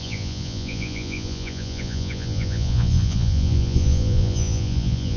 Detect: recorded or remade remade